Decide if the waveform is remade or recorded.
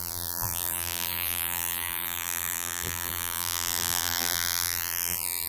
remade